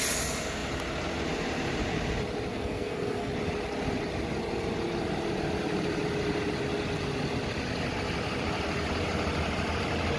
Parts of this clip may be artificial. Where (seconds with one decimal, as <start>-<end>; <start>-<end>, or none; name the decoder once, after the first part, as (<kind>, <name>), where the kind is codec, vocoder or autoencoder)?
2.5-3.3 (codec, SNAC)